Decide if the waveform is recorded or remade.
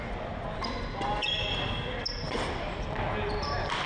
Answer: recorded